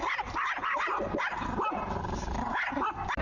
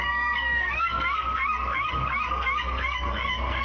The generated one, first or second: second